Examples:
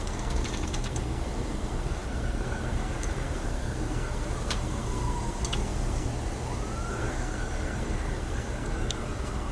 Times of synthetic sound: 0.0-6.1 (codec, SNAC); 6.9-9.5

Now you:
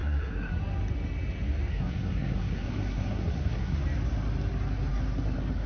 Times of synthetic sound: 0.0-0.5 (codec, SNAC); 1.7-3.8

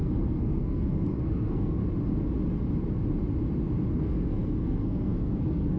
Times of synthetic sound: 0.0-1.8 (codec, SNAC); 3.9-5.8

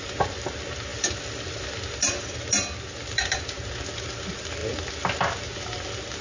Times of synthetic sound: none

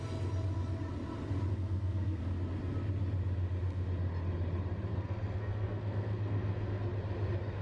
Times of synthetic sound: 1.5-2.2 (codec, SNAC); 4.9-6.8

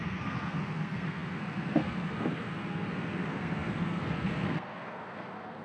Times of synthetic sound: 0.0-5.6 (codec, SNAC)

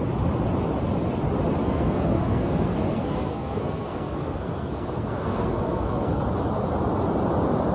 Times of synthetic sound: 1.6-6.2 (codec, SNAC)